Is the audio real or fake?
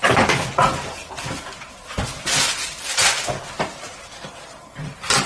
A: real